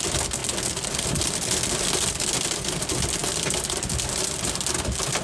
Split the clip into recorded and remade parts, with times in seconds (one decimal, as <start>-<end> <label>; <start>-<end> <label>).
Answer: 0.0-5.2 recorded